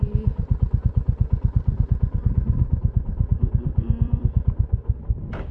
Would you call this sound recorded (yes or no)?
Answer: no